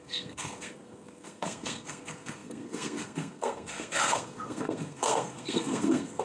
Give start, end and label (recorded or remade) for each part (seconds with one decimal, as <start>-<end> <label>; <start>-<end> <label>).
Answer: 0.0-6.2 remade